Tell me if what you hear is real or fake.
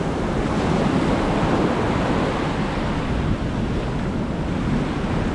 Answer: real